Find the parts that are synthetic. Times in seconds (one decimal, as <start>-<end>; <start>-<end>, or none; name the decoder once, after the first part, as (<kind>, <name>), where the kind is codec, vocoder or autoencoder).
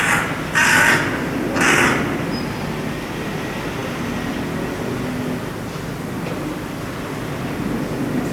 none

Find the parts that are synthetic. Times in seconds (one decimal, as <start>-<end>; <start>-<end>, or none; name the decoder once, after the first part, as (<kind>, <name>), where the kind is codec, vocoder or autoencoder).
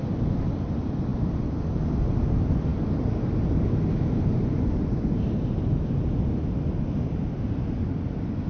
none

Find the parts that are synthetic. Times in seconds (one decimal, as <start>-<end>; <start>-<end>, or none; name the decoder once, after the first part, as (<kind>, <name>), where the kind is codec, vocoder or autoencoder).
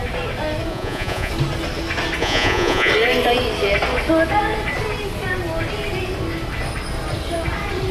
0.7-1.3 (vocoder, Vocos); 2.2-2.9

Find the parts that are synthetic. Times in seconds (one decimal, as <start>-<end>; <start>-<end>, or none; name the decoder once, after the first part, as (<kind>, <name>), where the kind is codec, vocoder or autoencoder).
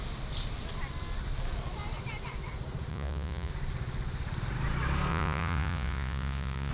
2.9-3.5 (vocoder, Vocos); 5.1-6.7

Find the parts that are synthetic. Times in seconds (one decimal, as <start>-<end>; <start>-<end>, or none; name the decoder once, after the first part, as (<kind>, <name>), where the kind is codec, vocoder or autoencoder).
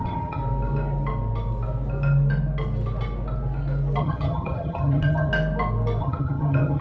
0.0-0.4 (vocoder, HiFi-GAN); 4.0-5.3; 6.0-6.8